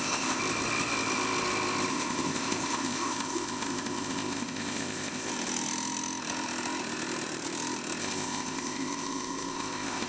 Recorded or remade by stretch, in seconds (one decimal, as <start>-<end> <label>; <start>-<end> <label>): 0.0-0.4 remade; 0.4-1.9 recorded; 1.9-5.3 remade; 5.3-8.0 recorded; 8.0-10.1 remade